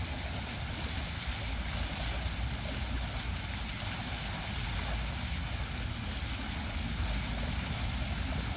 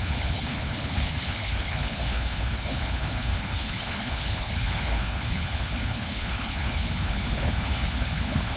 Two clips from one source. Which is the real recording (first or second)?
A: first